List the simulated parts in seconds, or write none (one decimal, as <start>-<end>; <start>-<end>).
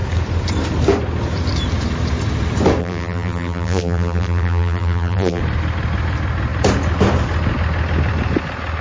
2.8-5.4